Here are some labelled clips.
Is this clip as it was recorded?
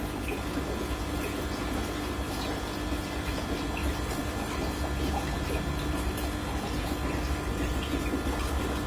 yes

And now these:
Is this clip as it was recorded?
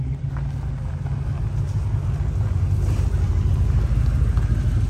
yes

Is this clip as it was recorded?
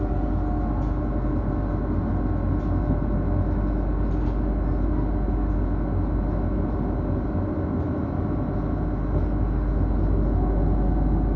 yes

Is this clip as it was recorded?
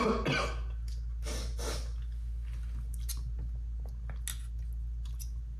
yes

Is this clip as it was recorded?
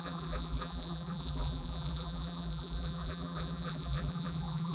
no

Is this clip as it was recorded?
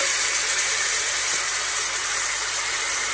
no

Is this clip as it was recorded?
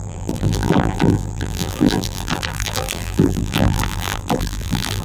no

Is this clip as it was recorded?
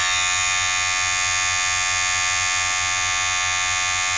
yes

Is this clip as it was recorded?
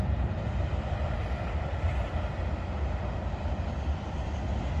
yes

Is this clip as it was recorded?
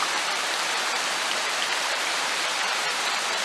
no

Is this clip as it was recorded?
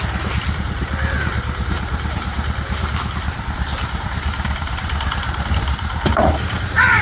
no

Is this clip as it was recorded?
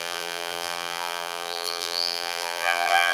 no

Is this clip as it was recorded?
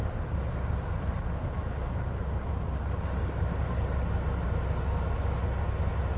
yes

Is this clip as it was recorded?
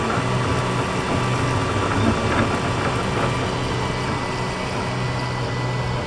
yes